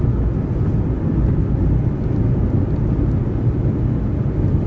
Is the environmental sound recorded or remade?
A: recorded